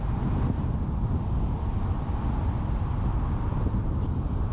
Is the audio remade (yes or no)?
yes